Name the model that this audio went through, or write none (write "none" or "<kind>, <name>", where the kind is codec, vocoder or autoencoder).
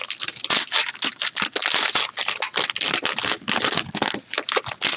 none